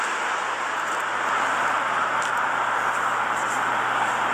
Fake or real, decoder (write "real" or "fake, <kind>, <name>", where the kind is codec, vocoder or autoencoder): real